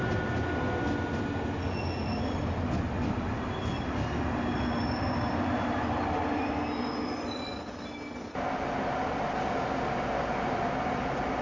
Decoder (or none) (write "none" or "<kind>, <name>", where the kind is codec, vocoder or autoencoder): none